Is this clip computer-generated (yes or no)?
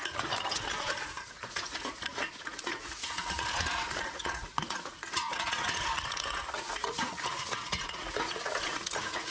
yes